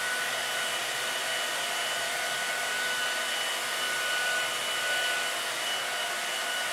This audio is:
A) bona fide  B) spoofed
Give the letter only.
A